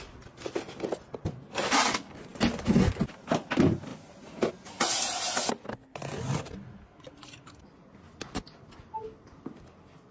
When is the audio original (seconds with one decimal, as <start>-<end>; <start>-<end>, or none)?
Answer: 0.0-3.9; 4.5-10.1